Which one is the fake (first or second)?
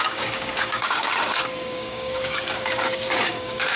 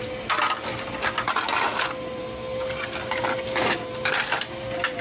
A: first